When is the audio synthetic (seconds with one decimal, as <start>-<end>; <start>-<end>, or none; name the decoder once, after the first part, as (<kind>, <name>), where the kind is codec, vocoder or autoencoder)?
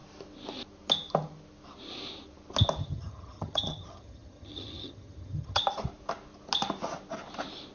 2.8-5.6 (vocoder, HiFi-GAN)